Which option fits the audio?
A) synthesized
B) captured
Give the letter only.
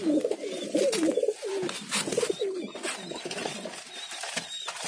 B